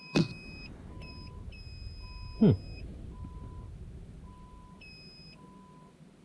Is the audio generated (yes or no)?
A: no